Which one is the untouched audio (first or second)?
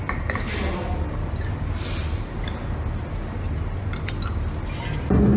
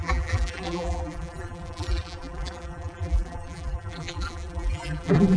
first